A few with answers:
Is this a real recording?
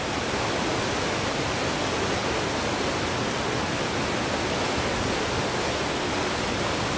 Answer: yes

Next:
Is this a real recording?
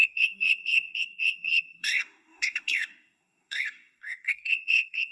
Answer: no